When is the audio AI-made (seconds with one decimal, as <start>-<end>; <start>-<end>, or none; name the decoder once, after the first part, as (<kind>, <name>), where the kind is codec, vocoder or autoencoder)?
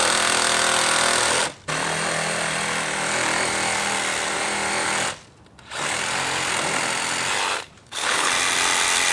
7.8-8.3 (codec, HILCodec)